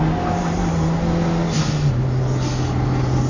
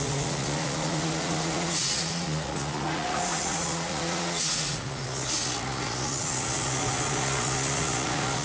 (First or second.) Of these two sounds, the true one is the first